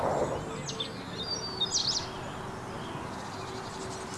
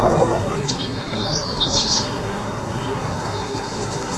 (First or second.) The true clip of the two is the first